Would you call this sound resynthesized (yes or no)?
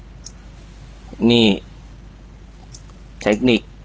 no